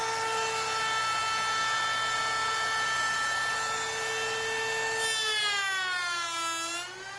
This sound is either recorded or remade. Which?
recorded